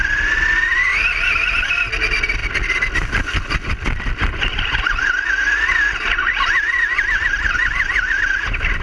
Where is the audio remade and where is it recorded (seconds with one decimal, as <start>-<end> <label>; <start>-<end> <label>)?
0.0-8.8 recorded